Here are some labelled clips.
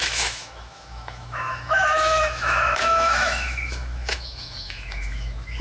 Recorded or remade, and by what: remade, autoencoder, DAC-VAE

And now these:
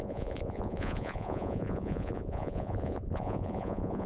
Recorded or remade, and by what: remade, vocoder, Vocos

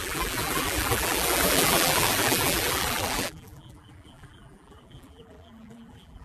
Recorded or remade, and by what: remade, vocoder, BigVGAN v2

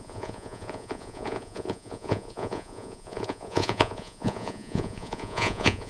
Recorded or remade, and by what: remade, vocoder, Vocos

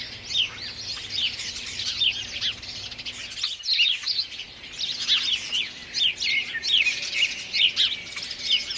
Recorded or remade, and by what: recorded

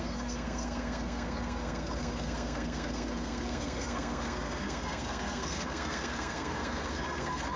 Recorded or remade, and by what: remade, codec, SNAC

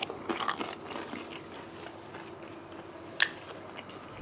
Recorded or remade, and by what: recorded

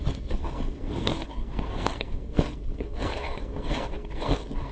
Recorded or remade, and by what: remade, codec, SNAC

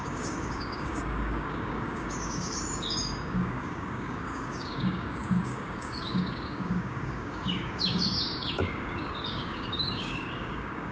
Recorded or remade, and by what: remade, codec, DAC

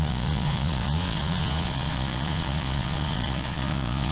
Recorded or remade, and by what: remade, vocoder, Vocos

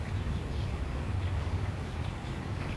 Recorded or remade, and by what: remade, codec, DAC